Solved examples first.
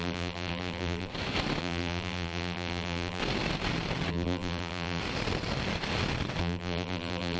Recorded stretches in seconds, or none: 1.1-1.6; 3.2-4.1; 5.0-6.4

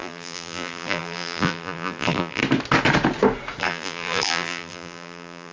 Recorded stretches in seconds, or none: 2.4-3.6

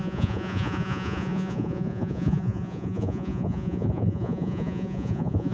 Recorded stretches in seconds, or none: none

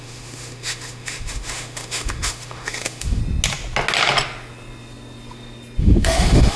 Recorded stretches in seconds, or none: 3.2-5.8